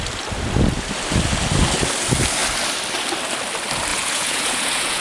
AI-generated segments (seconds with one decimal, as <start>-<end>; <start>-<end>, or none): 3.9-5.0